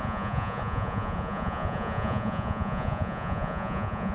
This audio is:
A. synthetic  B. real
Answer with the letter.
A